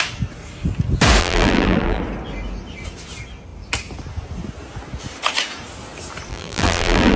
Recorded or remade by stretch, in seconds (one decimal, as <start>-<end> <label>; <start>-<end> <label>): 0.0-1.2 recorded; 1.2-2.0 remade; 2.0-6.3 recorded; 6.3-7.2 remade